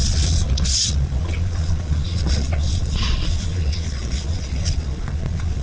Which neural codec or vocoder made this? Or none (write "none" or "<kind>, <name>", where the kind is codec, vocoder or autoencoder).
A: vocoder, Vocos